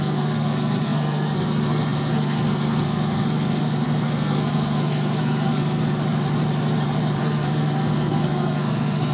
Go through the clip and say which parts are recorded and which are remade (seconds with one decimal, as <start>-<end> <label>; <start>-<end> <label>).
0.0-5.8 remade; 5.8-7.2 recorded; 7.2-9.1 remade